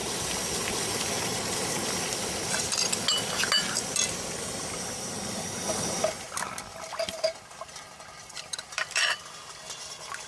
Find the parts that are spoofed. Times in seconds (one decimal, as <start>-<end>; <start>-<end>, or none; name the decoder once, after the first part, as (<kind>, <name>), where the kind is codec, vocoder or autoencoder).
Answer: 0.0-2.9 (vocoder, BigVGAN v2); 6.7-9.3

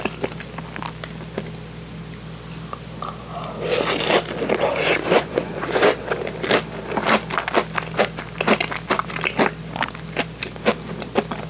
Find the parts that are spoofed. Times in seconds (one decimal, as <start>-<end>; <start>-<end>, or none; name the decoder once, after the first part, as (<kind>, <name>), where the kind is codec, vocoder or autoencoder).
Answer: 4.7-6.0 (vocoder, Vocos)

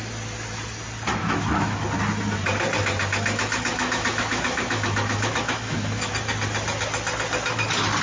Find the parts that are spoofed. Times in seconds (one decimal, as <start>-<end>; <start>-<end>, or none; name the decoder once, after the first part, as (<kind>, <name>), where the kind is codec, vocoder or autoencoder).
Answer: 1.2-1.8 (autoencoder, DAC-VAE); 3.7-6.1

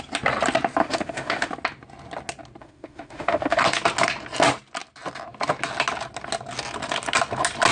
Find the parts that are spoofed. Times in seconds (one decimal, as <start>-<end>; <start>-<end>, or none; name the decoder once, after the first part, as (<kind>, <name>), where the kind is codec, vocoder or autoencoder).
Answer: 0.8-1.5 (autoencoder, DAC-VAE); 2.6-3.6